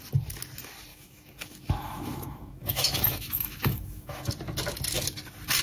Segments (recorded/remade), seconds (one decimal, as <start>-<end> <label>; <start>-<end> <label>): 0.0-0.9 recorded; 0.9-4.3 remade; 4.3-5.6 recorded